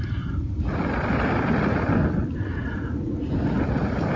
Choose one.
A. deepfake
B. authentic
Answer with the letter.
B